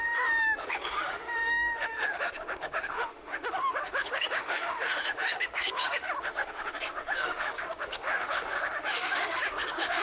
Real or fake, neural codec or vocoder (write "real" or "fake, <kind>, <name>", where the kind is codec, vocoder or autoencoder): fake, autoencoder, DAC-VAE